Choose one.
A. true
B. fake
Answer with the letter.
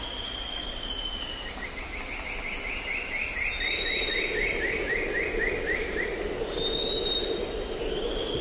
A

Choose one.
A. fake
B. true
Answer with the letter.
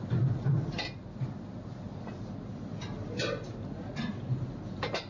B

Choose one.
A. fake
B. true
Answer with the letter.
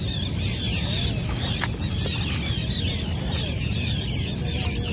B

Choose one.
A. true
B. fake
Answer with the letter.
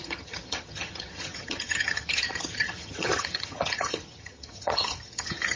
B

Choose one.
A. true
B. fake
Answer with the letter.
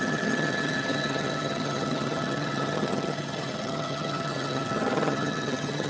B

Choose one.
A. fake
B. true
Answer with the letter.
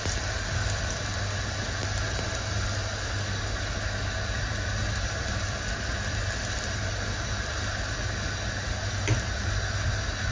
B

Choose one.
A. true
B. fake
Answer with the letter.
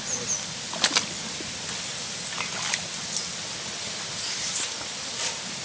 A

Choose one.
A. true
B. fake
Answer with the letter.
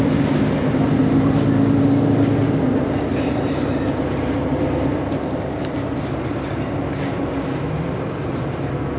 A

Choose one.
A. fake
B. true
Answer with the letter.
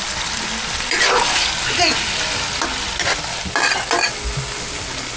B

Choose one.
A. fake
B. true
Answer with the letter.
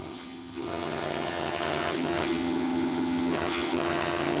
A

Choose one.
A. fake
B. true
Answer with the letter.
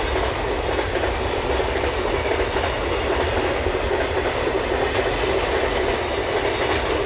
B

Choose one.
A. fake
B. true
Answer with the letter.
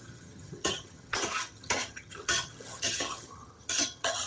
A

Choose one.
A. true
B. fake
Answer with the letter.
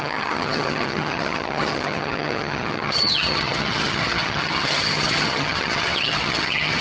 B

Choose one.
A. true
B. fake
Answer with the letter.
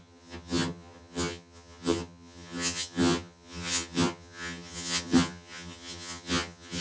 B